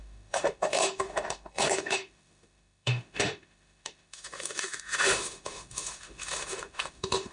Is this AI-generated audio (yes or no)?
yes